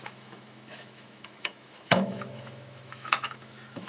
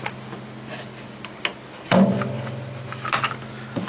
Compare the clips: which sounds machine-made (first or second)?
first